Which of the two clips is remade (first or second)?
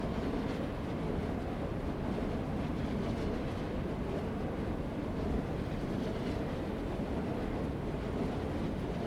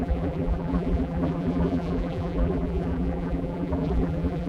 second